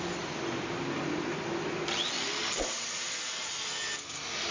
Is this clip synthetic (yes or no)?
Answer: no